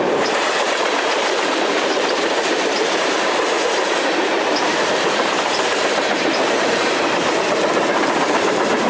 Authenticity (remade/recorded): remade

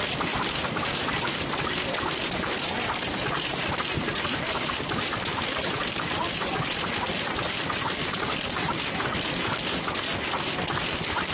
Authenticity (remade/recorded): remade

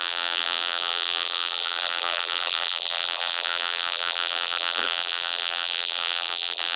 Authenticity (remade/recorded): remade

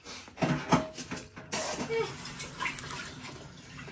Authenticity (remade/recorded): recorded